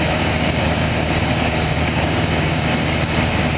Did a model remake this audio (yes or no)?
yes